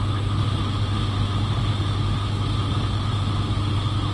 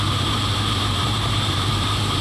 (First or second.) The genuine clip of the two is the first